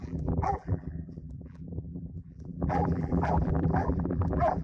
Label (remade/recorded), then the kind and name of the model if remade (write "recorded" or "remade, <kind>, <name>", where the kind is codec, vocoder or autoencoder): remade, vocoder, BigVGAN v2